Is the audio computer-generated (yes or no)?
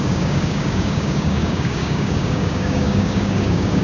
yes